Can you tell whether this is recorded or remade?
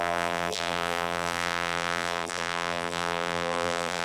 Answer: remade